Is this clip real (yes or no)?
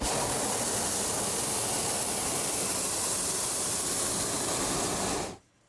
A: yes